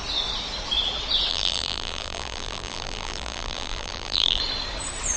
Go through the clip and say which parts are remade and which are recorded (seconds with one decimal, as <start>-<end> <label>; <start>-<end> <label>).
0.0-1.3 recorded; 1.3-4.4 remade; 4.4-5.2 recorded